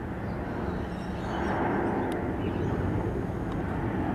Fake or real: real